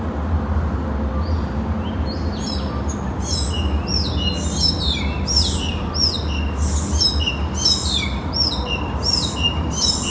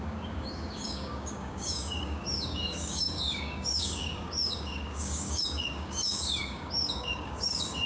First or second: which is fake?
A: second